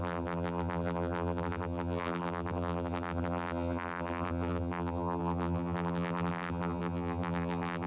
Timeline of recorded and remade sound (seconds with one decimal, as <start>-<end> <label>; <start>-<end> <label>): 0.0-7.9 remade